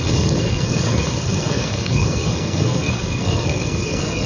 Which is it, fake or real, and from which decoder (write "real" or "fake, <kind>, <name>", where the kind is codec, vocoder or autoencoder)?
fake, codec, SNAC